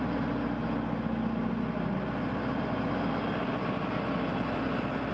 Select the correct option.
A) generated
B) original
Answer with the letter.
B